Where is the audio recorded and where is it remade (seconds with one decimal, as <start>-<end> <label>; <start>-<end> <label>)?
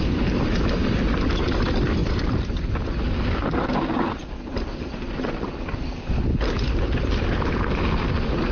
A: 0.0-8.5 recorded